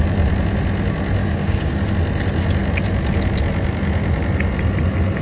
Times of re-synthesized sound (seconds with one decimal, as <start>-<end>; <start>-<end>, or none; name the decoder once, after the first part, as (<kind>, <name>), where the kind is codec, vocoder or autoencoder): 1.2-1.9 (codec, DAC)